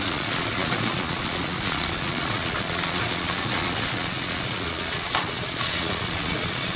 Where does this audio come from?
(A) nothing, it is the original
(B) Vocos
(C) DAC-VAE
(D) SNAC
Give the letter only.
B